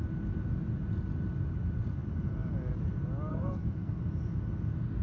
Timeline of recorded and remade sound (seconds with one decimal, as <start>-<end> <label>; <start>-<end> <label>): 0.0-3.3 recorded; 3.3-4.0 remade; 4.0-5.0 recorded